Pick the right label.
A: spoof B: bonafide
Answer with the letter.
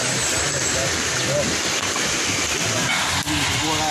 B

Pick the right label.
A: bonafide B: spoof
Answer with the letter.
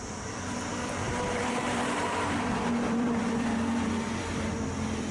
B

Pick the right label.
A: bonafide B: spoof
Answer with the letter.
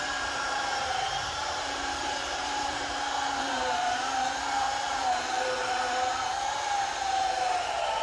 B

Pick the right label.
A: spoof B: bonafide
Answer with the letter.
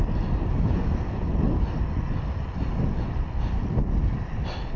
B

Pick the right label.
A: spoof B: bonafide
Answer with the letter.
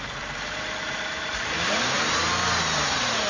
A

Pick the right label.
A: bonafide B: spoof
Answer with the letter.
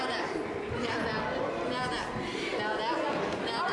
A